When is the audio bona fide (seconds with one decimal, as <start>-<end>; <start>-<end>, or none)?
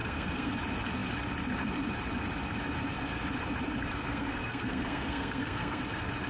0.5-3.9; 5.8-6.3